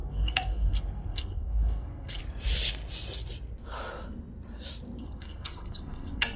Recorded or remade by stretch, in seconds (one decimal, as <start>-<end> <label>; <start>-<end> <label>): 0.0-2.2 remade; 2.2-5.0 recorded; 5.0-6.4 remade